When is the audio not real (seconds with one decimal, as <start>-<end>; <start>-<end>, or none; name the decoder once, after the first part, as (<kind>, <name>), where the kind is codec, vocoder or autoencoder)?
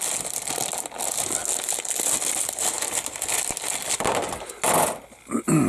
none